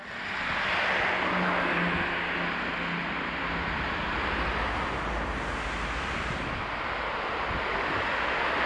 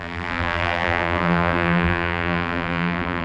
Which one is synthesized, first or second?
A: second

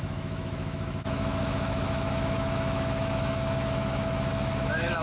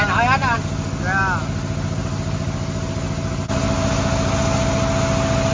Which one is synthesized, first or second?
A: first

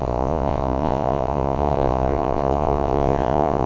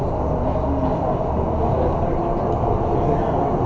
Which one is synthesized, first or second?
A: first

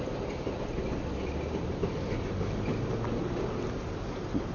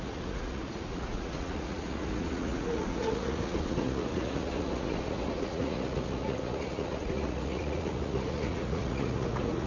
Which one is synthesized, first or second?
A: second